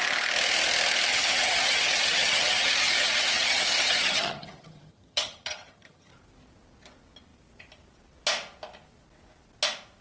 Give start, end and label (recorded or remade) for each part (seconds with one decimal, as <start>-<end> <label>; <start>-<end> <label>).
0.0-1.1 recorded; 1.1-6.1 remade; 6.1-10.0 recorded